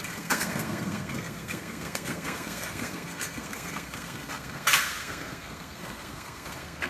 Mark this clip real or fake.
fake